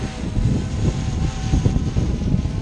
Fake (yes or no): no